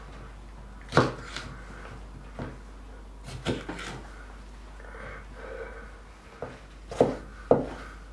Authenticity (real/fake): real